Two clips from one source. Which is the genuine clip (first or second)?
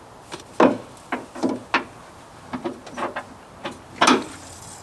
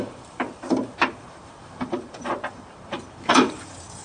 first